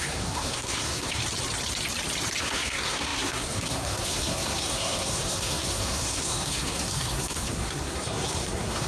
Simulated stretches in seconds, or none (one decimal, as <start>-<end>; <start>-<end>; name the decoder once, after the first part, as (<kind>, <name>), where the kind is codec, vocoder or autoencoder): 0.0-1.2 (codec, SNAC); 2.4-8.9